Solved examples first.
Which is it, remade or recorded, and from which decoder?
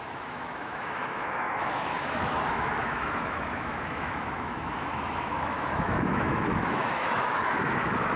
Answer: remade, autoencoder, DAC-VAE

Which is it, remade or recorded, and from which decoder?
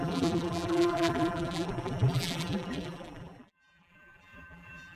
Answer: remade, vocoder, BigVGAN v2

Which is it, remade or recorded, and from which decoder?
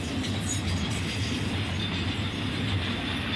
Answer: recorded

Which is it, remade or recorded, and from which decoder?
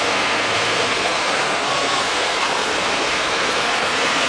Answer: remade, codec, SNAC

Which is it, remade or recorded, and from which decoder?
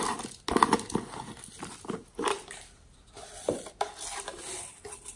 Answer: recorded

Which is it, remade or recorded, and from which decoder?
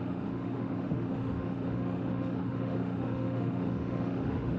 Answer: remade, autoencoder, DAC-VAE